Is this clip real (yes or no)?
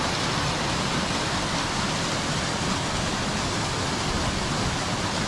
yes